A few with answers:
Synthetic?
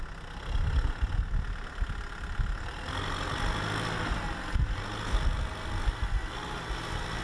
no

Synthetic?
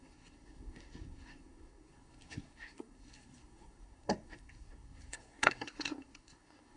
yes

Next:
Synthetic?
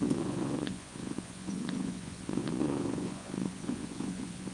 yes